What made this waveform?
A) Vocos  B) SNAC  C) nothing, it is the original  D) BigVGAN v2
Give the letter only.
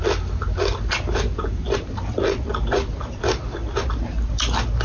C